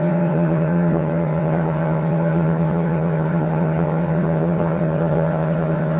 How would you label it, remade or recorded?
remade